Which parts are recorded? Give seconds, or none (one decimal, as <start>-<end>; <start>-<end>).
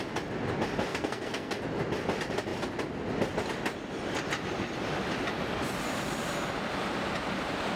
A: 0.0-0.9; 1.6-7.8